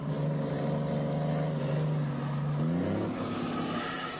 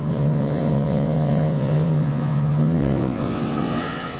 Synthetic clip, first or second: second